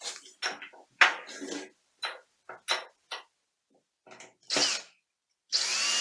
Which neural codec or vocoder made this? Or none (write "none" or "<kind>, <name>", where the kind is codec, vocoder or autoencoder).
none